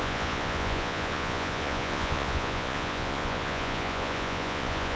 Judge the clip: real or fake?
fake